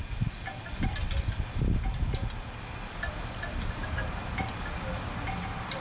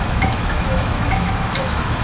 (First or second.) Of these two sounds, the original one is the first